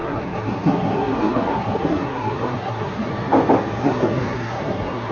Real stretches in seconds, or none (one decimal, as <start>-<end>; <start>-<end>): 3.1-3.8